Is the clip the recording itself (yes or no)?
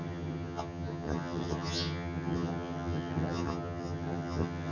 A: no